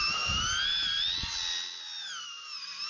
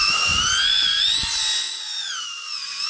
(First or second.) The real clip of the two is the first